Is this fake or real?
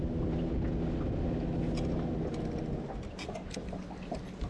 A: real